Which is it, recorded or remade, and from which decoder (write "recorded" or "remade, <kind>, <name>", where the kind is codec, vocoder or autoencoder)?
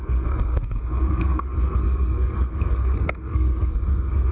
remade, codec, SNAC